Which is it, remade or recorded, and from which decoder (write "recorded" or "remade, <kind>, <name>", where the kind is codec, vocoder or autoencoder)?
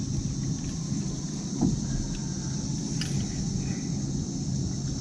recorded